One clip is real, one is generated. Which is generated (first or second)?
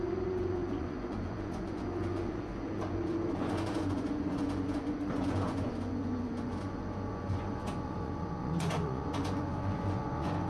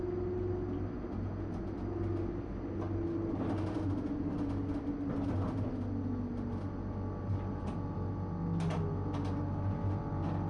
first